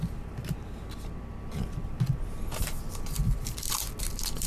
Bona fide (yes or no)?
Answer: yes